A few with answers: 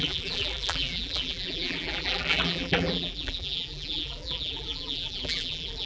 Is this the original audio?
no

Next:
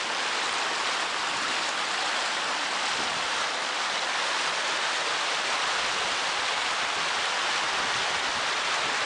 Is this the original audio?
yes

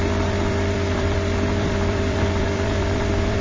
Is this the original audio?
no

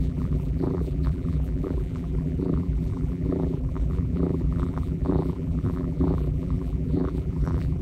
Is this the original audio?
no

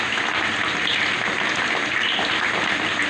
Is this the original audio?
yes